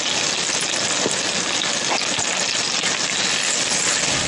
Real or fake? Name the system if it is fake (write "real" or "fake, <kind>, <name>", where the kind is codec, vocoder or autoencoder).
real